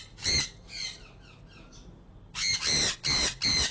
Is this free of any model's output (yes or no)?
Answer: no